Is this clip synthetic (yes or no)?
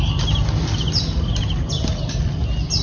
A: no